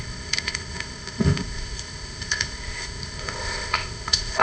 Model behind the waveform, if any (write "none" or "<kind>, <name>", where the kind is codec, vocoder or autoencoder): codec, ZipCodec